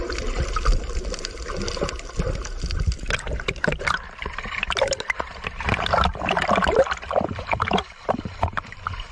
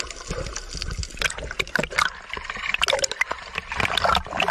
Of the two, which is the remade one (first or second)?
first